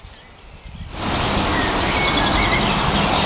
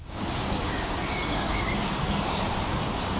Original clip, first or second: first